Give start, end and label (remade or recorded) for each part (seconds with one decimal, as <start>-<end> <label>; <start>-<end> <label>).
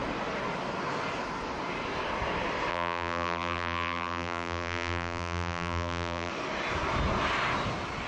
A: 0.0-2.7 recorded; 2.7-6.3 remade; 6.3-8.1 recorded